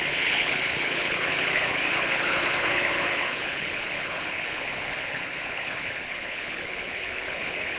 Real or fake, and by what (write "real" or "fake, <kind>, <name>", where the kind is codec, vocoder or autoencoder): fake, codec, HILCodec